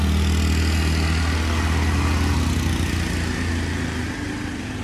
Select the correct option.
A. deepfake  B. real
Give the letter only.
B